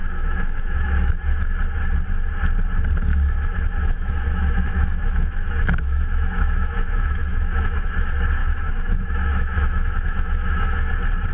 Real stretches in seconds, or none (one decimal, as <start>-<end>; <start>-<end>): 1.4-3.1; 7.9-8.4; 10.9-11.3